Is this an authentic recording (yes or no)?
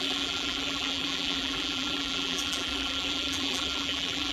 no